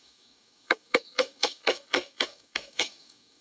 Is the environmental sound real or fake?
fake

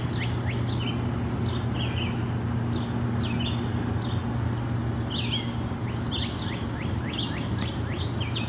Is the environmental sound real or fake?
real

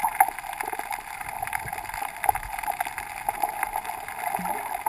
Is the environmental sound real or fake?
real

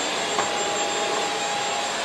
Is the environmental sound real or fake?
real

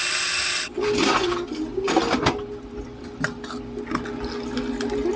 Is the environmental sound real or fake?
real